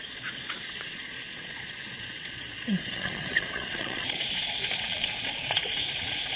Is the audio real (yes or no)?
no